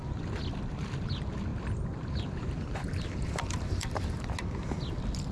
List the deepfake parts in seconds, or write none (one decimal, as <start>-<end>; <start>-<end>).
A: 1.5-3.9